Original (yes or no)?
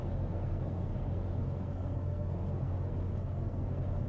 no